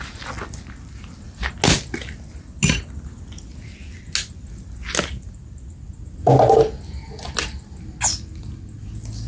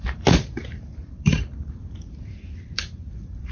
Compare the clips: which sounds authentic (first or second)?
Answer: first